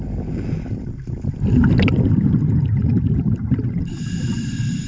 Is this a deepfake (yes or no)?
no